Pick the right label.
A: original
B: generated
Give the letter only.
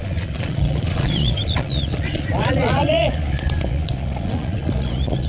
B